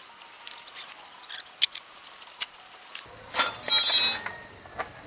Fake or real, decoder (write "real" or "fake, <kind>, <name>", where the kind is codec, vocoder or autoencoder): real